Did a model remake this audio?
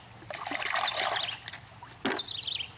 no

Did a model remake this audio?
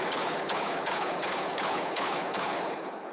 yes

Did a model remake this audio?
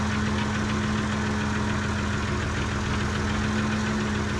no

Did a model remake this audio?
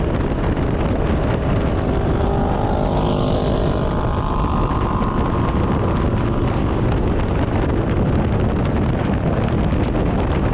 no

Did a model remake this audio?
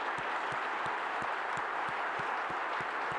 no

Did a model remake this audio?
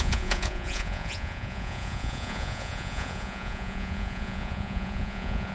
yes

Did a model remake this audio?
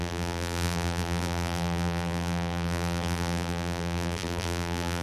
yes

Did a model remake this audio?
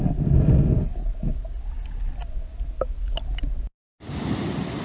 no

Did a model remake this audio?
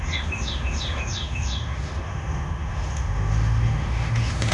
yes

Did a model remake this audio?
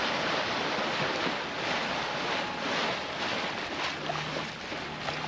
no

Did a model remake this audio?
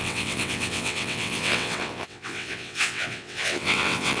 yes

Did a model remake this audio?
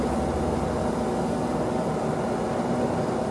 no